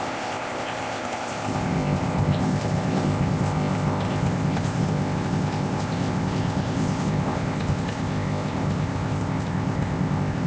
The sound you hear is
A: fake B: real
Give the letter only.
A